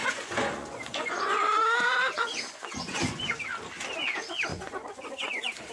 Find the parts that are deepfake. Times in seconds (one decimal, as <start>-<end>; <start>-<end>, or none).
0.0-3.4; 4.5-5.7